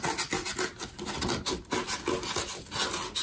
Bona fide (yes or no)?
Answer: yes